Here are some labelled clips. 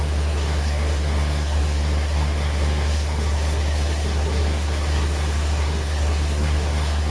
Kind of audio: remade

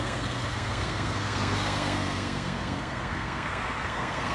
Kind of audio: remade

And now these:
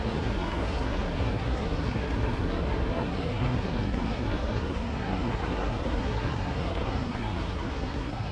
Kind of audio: remade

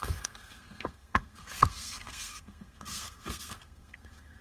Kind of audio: remade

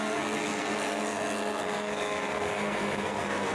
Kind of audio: remade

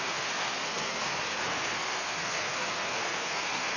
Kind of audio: remade